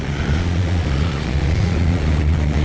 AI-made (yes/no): yes